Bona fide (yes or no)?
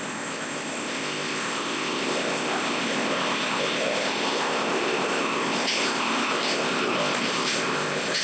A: no